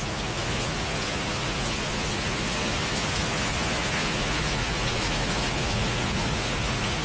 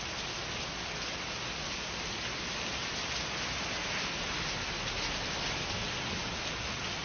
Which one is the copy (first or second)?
first